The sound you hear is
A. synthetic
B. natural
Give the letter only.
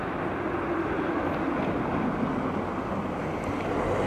B